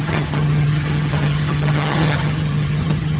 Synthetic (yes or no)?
yes